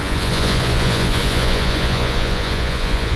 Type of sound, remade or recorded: remade